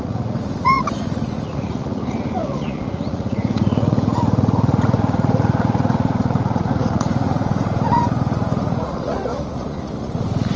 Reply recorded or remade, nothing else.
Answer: remade